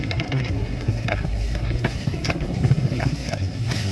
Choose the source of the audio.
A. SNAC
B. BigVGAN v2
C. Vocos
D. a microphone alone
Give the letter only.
A